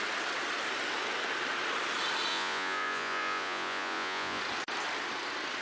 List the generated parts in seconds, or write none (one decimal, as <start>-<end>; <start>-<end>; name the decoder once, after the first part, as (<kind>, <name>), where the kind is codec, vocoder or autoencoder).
2.3-4.4 (vocoder, Vocos)